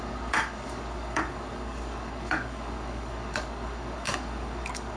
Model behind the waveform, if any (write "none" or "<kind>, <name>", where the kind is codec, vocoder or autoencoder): codec, DAC